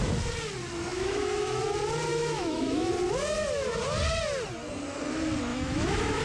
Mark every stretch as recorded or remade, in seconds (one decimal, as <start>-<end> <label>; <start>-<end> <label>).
0.0-0.9 recorded; 0.9-1.6 remade; 1.6-2.1 recorded; 2.1-2.9 remade; 2.9-5.5 recorded; 5.5-6.2 remade